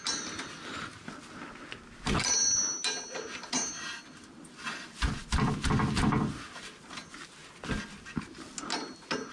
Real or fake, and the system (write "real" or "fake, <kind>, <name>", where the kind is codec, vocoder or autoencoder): real